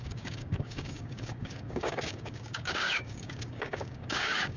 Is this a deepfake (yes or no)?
yes